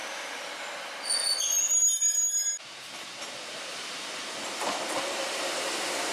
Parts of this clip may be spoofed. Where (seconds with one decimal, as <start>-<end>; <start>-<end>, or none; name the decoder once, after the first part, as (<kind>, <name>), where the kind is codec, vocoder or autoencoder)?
none